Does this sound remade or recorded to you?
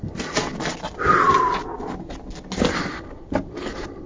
recorded